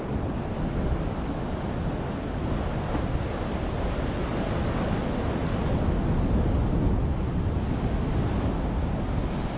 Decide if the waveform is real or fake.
real